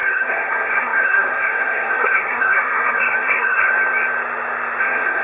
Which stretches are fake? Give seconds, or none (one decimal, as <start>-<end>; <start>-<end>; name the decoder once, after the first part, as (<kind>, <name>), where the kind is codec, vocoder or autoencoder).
0.0-3.7 (codec, SNAC); 4.8-5.2